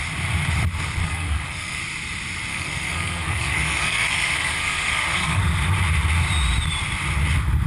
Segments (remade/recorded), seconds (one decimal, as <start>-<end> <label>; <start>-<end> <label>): 0.0-1.0 recorded; 1.0-1.8 remade; 1.8-2.5 recorded; 2.5-5.4 remade; 5.4-7.7 recorded